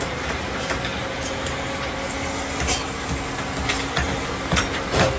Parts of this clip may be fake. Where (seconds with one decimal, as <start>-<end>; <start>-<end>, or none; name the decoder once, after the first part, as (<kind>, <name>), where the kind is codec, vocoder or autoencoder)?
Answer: none